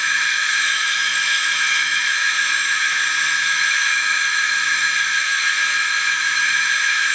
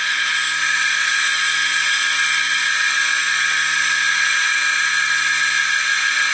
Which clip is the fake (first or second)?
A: first